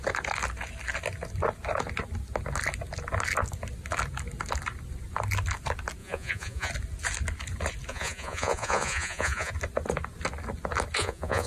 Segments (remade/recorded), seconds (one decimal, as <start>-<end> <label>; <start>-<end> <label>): 0.0-6.0 recorded; 6.0-6.7 remade; 6.7-7.9 recorded; 7.9-9.5 remade; 9.5-11.0 recorded; 11.0-11.5 remade

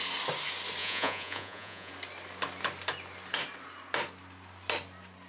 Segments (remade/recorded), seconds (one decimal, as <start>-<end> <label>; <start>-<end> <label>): 0.0-0.8 recorded; 0.8-1.9 remade; 1.9-5.3 recorded

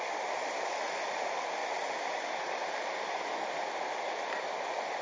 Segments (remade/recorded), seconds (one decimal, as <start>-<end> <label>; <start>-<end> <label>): 0.0-5.0 recorded

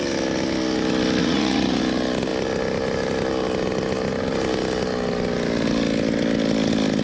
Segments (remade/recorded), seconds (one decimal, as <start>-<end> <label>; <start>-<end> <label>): 0.0-1.2 recorded; 1.2-1.8 remade; 1.8-7.0 recorded

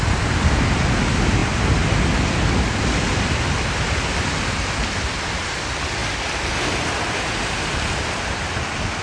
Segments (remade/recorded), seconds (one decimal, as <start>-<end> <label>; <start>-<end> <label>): 0.0-9.0 recorded

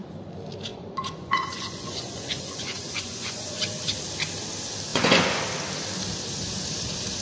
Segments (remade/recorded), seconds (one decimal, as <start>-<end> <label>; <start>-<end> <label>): 0.0-0.7 recorded; 0.7-3.6 remade; 3.6-4.9 recorded; 4.9-5.4 remade; 5.4-7.2 recorded

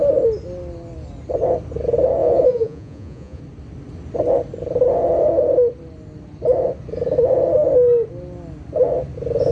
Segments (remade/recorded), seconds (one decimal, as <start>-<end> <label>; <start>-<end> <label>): 0.0-2.2 recorded; 2.2-3.4 remade; 3.4-9.5 recorded

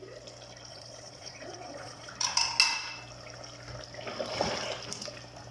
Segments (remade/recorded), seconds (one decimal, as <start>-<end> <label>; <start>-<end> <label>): 0.0-0.7 recorded; 0.7-2.1 remade; 2.1-5.5 recorded